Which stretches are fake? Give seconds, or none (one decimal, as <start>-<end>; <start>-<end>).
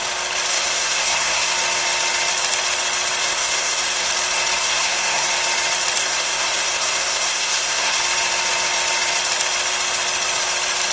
0.5-1.5; 3.2-4.1; 4.6-5.3; 6.0-8.0